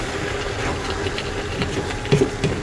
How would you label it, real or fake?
real